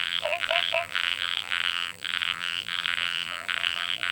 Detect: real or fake fake